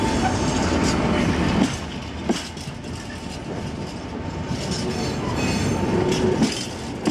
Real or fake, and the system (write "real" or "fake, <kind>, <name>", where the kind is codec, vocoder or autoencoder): real